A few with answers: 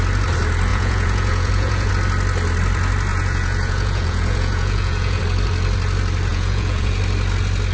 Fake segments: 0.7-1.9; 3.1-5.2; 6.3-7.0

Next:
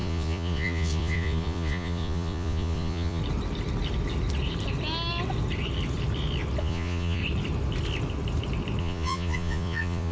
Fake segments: 0.0-3.2; 6.6-7.2; 8.8-10.1